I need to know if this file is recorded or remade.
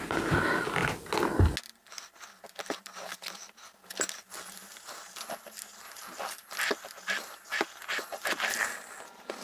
recorded